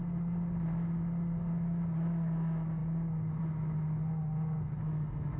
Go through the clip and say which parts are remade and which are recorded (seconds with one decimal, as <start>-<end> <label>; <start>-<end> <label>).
0.0-5.4 recorded